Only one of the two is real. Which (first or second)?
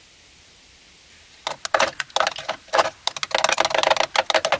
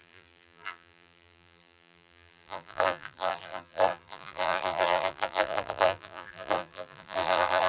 first